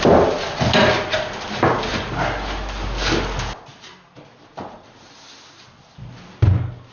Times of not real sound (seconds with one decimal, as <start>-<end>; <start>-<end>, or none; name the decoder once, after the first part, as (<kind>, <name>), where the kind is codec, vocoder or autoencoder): none